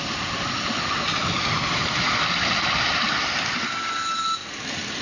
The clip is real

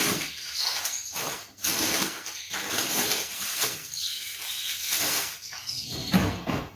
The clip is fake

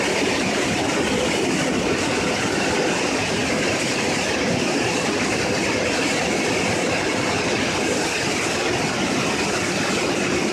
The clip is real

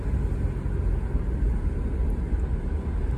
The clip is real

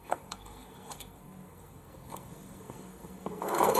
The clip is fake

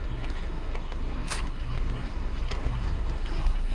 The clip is fake